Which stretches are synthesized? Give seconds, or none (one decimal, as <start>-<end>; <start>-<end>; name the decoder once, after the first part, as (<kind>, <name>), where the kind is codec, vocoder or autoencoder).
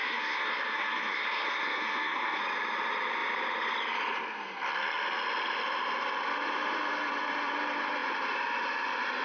0.0-2.4 (codec, SNAC)